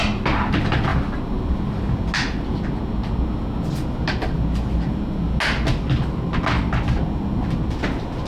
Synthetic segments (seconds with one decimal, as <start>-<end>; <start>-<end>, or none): none